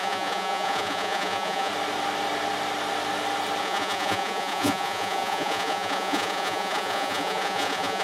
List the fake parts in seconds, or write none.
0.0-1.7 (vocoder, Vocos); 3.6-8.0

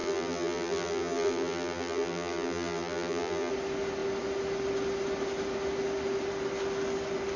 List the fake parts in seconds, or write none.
0.0-3.5 (vocoder, BigVGAN v2)

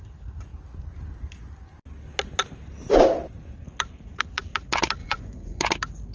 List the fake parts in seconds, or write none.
5.0-5.6 (vocoder, Vocos)

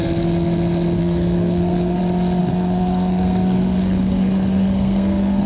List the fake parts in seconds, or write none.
1.0-2.0 (codec, SNAC); 2.4-5.5

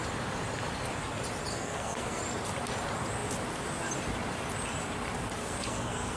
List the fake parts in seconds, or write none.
1.5-2.2 (codec, SNAC); 5.4-6.2

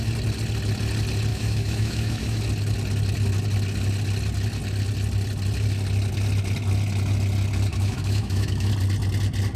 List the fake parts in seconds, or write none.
1.3-2.4 (autoencoder, DAC-VAE); 7.7-8.7

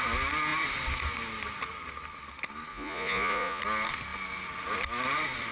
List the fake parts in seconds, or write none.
2.7-3.6 (vocoder, Vocos)

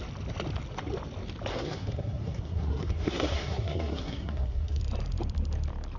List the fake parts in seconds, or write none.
1.5-4.8 (codec, SNAC)